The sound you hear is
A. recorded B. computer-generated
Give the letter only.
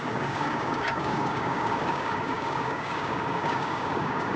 B